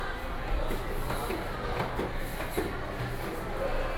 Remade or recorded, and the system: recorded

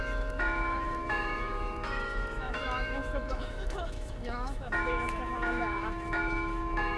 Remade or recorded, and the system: remade, autoencoder, DAC-VAE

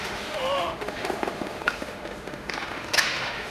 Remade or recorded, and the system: remade, autoencoder, DAC-VAE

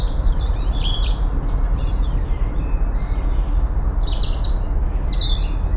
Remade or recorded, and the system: recorded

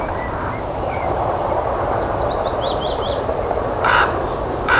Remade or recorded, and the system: remade, vocoder, BigVGAN v2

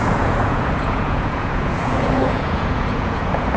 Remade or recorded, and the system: remade, vocoder, Vocos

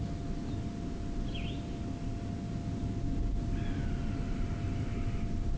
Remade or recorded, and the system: recorded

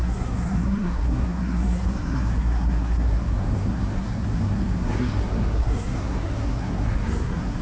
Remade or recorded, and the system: remade, codec, SNAC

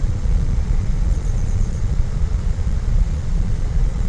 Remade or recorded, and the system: remade, vocoder, Vocos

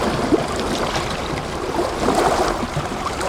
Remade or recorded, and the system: remade, vocoder, BigVGAN v2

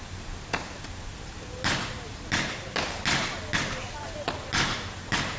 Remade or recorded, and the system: recorded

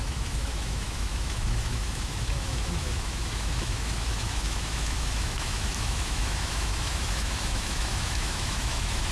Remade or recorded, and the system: remade, autoencoder, DAC-VAE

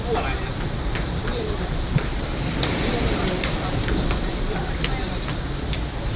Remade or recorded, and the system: remade, vocoder, BigVGAN v2